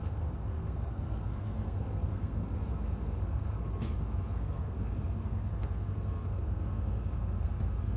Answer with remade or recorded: remade